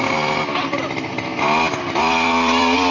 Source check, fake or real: real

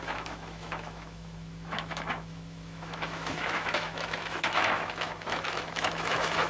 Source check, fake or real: fake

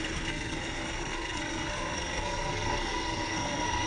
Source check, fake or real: fake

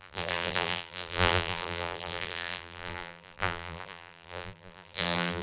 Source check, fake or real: fake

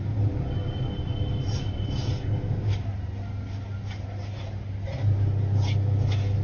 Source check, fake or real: real